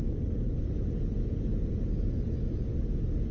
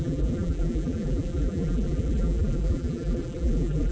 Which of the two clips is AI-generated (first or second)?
second